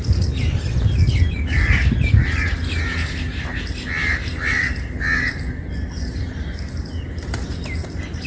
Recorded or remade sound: recorded